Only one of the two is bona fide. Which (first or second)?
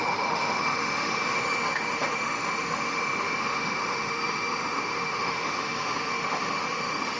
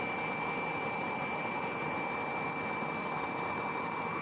second